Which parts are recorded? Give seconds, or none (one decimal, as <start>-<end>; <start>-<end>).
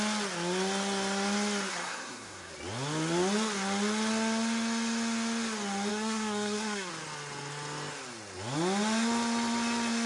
0.0-1.7; 2.5-5.9; 6.9-10.1